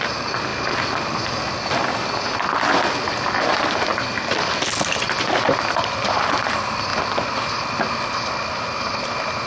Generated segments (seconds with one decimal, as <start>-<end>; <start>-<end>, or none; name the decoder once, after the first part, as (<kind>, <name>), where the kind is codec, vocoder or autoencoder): 0.0-0.5 (vocoder, BigVGAN v2); 3.4-3.9; 5.0-6.9; 8.8-9.5